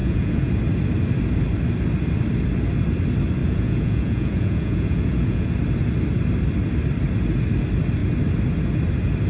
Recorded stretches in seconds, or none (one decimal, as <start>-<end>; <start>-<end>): 0.5-3.4; 5.5-9.3